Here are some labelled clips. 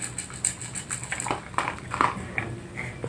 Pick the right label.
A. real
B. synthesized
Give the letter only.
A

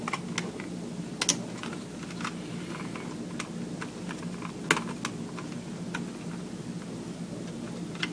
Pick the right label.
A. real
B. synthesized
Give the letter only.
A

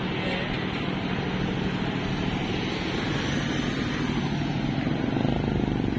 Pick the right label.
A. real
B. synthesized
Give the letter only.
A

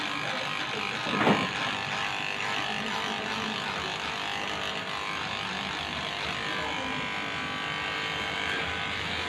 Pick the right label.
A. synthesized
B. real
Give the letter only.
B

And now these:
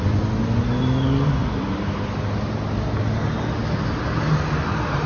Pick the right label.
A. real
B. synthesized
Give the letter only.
A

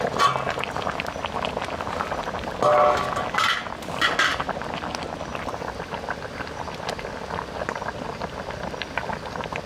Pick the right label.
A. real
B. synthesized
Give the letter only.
A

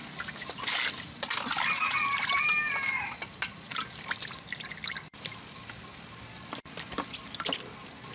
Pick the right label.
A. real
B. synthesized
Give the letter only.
A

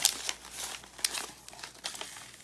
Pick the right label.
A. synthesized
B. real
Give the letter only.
B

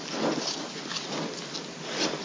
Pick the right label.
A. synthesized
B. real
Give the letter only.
B